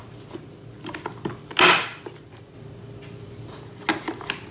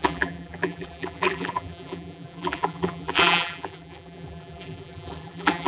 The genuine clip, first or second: first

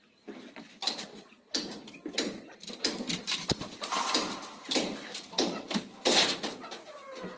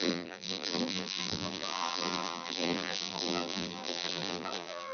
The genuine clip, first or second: first